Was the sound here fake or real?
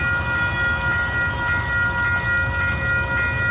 real